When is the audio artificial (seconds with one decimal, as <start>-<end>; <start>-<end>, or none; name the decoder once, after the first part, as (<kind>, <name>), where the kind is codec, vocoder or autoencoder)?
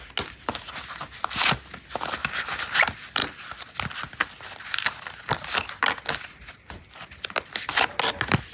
none